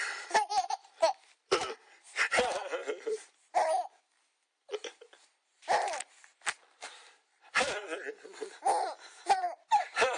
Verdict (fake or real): fake